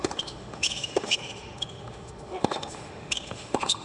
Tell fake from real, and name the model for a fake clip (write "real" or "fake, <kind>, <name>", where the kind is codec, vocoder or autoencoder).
fake, autoencoder, DAC-VAE